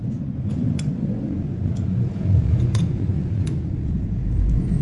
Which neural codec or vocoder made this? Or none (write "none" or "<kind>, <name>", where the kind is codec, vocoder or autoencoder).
vocoder, Vocos